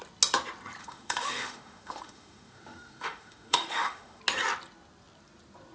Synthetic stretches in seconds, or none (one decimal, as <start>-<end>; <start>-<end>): 0.8-4.2